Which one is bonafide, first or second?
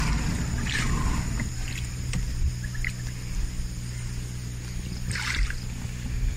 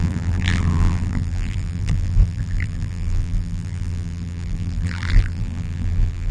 first